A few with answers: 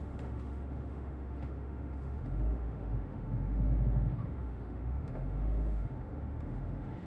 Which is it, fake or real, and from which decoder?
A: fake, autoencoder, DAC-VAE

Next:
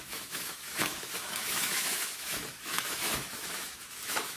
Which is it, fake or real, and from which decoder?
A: fake, autoencoder, DAC-VAE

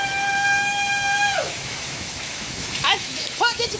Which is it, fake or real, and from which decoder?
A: fake, autoencoder, DAC-VAE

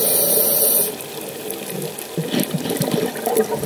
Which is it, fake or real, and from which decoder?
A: real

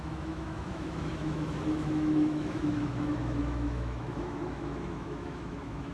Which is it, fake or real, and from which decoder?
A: fake, autoencoder, DAC-VAE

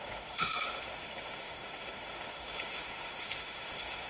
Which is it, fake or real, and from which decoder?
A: fake, autoencoder, DAC-VAE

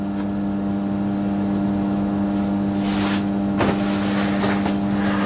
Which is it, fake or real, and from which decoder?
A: real